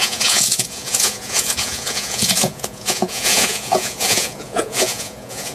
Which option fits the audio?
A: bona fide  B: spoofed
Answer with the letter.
B